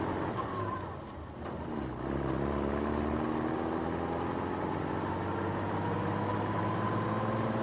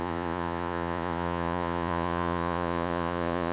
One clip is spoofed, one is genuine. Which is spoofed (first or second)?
second